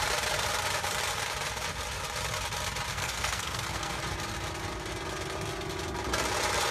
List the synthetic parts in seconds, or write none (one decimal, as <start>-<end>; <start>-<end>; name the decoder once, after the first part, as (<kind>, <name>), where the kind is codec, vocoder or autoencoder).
2.9-4.0 (codec, SNAC)